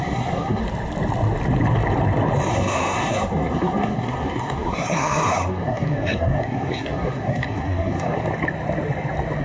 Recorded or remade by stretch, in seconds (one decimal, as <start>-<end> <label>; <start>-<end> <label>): 0.0-0.6 remade; 0.6-2.5 recorded; 2.5-8.2 remade; 8.2-9.4 recorded